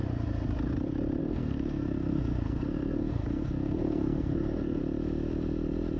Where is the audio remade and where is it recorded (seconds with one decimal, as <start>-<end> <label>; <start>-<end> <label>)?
0.0-1.2 recorded; 1.2-4.8 remade; 4.8-6.0 recorded